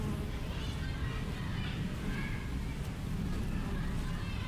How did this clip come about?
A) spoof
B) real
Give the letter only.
B